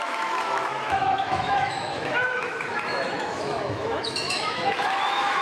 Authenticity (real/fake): fake